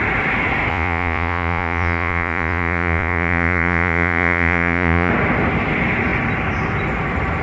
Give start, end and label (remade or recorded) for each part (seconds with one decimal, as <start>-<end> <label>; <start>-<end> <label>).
0.0-0.7 recorded; 0.7-5.1 remade; 5.1-7.4 recorded